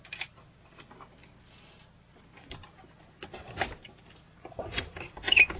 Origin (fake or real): real